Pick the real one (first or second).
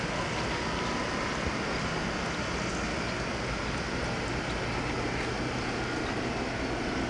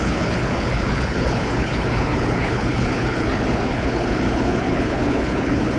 first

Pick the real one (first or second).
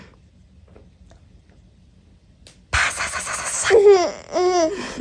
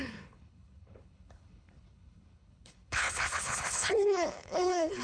first